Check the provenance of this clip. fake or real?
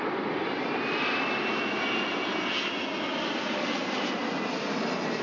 real